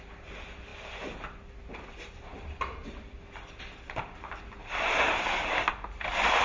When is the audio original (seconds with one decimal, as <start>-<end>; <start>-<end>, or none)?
0.0-4.6; 5.4-6.4